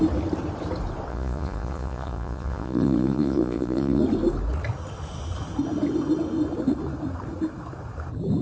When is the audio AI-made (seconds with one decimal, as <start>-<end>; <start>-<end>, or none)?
1.1-4.0